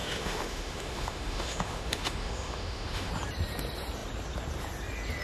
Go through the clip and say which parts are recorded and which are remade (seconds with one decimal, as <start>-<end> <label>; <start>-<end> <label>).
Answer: 0.0-3.1 remade; 3.1-5.2 recorded